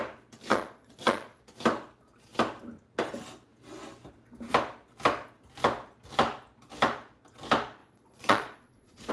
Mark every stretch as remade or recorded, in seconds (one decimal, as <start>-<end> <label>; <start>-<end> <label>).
0.0-0.5 recorded; 0.5-1.4 remade; 1.4-7.8 recorded; 7.8-9.1 remade